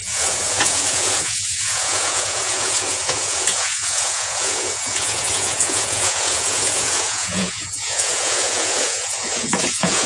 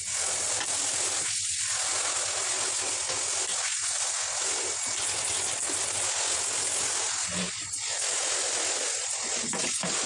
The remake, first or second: first